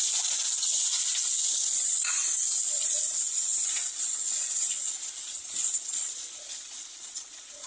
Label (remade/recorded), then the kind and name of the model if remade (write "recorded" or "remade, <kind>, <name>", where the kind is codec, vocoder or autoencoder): remade, vocoder, Vocos